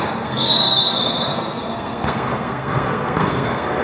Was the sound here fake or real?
fake